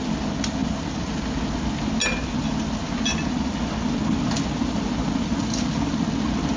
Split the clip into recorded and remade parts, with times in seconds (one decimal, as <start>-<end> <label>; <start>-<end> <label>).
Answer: 0.0-6.6 recorded